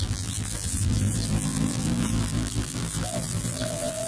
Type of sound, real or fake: fake